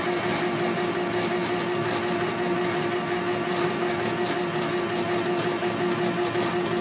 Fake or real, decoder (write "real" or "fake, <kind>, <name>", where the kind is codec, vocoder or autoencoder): real